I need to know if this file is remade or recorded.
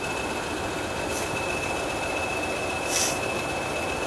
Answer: recorded